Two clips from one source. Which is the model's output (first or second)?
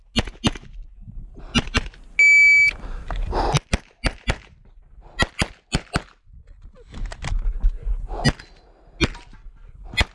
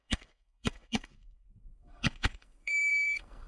second